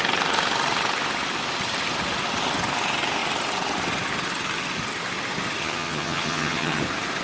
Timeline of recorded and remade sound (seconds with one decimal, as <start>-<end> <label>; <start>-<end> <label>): 0.0-5.6 recorded; 5.6-6.8 remade; 6.8-7.2 recorded